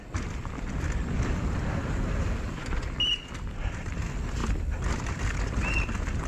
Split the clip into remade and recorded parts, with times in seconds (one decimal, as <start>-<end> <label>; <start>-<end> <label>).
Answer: 0.0-6.3 recorded